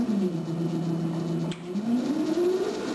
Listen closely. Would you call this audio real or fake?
real